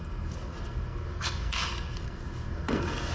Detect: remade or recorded remade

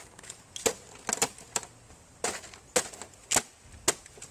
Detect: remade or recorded recorded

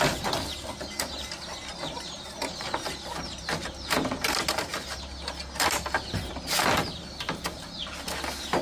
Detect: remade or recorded recorded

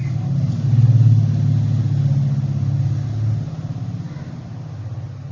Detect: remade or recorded recorded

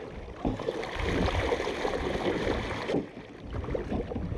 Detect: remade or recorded recorded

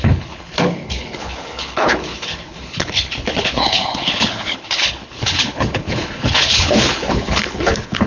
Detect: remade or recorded remade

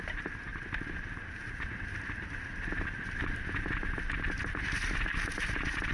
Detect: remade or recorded recorded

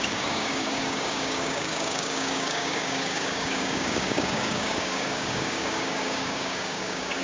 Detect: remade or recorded remade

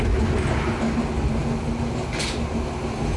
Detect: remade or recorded recorded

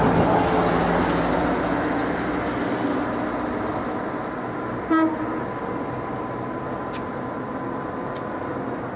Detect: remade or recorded recorded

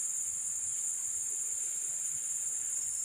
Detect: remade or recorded remade